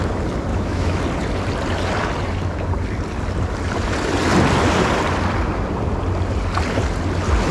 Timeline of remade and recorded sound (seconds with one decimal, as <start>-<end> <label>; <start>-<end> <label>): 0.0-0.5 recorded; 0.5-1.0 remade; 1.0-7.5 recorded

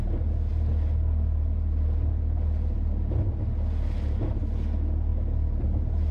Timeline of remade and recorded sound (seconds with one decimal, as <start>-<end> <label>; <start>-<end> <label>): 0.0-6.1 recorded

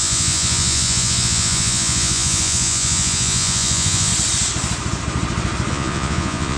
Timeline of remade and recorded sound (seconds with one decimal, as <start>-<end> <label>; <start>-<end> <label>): 0.0-4.1 remade; 4.1-5.7 recorded; 5.7-6.6 remade

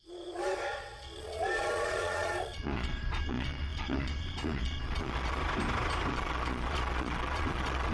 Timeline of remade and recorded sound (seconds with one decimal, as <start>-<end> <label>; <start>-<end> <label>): 0.0-5.4 remade; 5.4-6.1 recorded; 6.1-7.9 remade

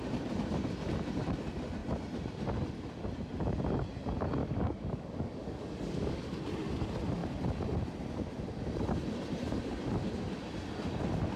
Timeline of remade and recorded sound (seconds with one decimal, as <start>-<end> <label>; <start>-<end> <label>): 0.0-4.4 recorded; 4.4-6.4 remade; 6.4-11.4 recorded